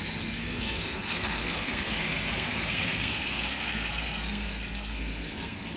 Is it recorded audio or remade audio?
remade